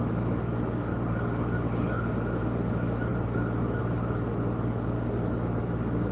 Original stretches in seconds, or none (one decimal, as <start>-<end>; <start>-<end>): 0.0-6.1